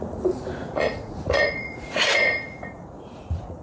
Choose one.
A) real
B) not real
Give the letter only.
B